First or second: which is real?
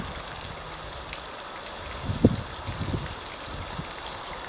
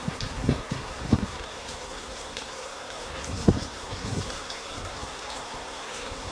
first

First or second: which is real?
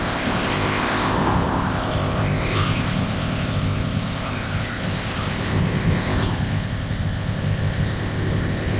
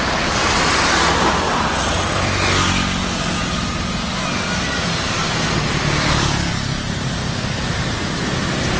second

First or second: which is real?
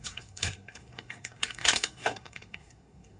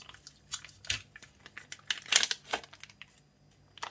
second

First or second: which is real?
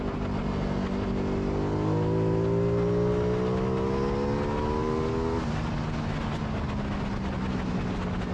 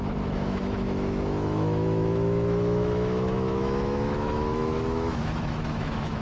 first